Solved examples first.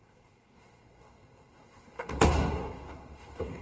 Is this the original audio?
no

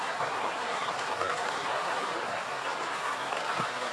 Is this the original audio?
no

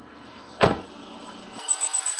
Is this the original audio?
no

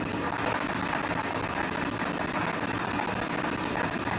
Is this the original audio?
yes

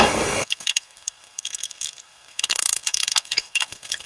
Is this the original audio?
no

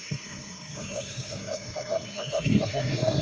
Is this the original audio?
no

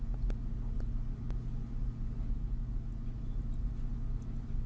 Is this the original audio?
yes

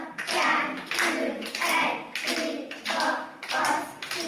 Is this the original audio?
yes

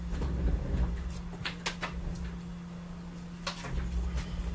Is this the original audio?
yes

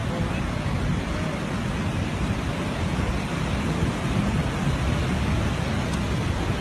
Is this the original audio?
yes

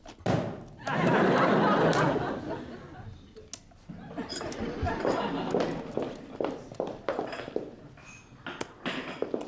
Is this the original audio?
yes